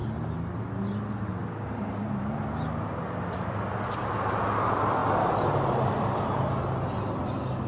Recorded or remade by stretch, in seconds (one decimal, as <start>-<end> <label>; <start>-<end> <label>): 0.0-7.7 recorded

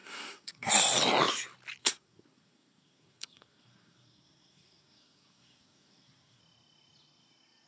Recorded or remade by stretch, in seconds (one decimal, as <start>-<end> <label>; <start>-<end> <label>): 0.0-0.7 remade; 0.7-1.8 recorded; 1.8-6.4 remade; 6.4-7.7 recorded